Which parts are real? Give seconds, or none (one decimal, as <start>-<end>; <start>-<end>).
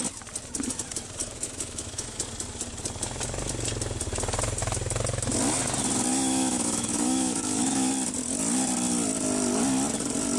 0.0-1.2; 2.2-6.1; 7.9-10.4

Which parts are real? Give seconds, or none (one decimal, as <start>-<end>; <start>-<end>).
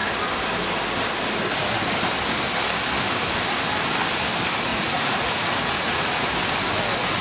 0.0-4.7; 6.2-7.2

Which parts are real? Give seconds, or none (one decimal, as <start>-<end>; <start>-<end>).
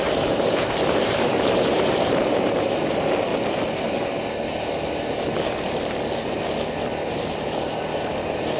3.3-7.1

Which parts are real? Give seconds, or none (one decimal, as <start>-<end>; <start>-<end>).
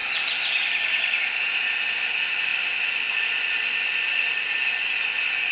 0.0-5.5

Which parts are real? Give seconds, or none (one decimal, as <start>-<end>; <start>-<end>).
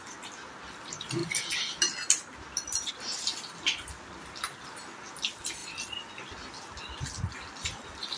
0.0-8.2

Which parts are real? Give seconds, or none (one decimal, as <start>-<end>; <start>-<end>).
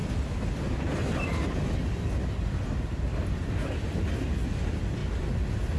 0.0-5.0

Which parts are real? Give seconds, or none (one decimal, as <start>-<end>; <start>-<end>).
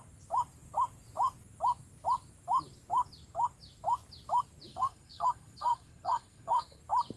0.0-4.7; 6.8-7.2